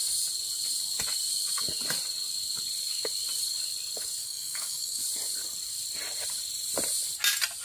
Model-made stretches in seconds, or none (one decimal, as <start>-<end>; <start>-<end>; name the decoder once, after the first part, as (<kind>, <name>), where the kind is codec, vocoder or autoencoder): 4.2-5.0 (codec, DAC)